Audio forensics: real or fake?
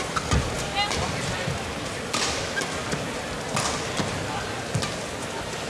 real